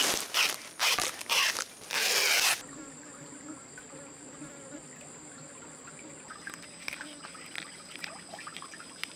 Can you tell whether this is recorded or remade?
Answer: recorded